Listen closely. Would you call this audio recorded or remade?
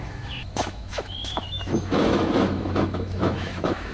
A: remade